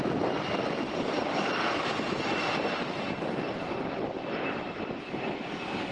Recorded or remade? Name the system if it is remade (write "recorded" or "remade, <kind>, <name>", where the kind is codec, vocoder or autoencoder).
remade, vocoder, BigVGAN v2